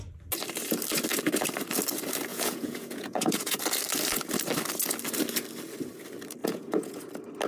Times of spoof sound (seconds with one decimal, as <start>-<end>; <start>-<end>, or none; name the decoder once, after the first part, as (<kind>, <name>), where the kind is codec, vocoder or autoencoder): 2.3-3.6 (vocoder, Vocos); 6.4-7.0